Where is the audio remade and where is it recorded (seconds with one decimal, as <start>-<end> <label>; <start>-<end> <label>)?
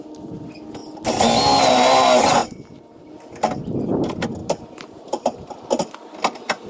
0.0-2.4 recorded; 2.4-3.1 remade; 3.1-4.4 recorded; 4.4-5.5 remade; 5.5-6.7 recorded